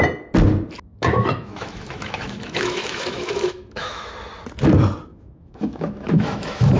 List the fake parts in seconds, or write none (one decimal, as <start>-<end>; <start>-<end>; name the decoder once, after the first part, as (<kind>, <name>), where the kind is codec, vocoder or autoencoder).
0.9-4.1 (autoencoder, DAC-VAE); 5.1-6.8